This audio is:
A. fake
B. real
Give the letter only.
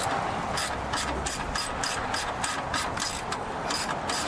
B